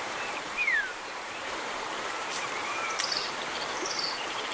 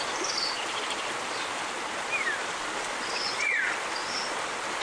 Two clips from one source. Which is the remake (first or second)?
first